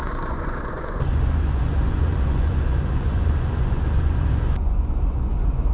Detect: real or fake fake